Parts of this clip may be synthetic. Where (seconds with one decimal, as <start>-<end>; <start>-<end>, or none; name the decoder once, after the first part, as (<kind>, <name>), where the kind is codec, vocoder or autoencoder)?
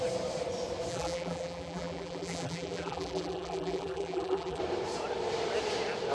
0.9-4.6 (vocoder, BigVGAN v2)